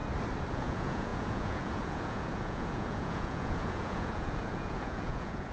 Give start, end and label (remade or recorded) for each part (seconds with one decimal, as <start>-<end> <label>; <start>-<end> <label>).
0.0-0.5 recorded; 0.5-5.5 remade